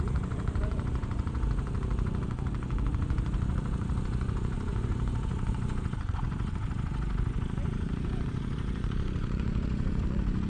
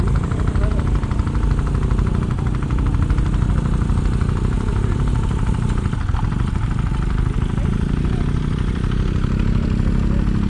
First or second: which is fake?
first